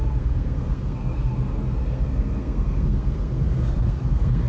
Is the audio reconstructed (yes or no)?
yes